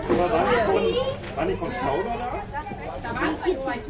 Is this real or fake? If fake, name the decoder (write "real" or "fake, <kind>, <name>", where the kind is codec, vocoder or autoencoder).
real